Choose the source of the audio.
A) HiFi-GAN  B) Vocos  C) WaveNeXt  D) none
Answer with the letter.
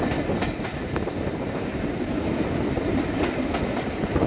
D